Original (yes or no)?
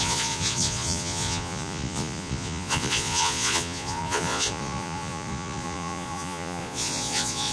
no